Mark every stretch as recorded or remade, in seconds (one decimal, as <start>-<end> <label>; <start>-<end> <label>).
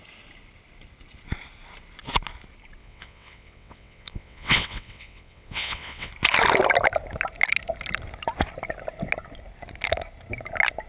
0.0-2.8 recorded; 2.8-6.1 remade; 6.1-10.9 recorded